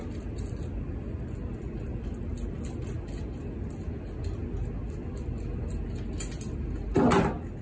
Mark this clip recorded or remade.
recorded